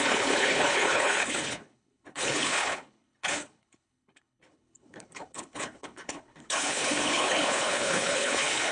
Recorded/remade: remade